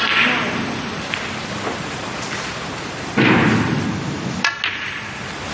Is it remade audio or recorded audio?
recorded